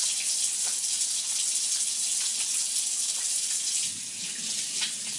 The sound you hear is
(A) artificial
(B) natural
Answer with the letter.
B